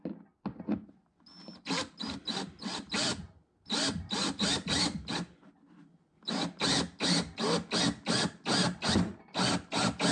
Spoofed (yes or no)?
no